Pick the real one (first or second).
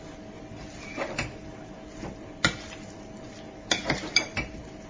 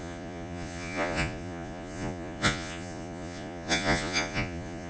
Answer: first